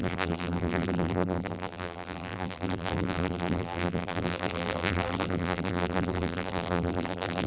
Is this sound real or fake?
fake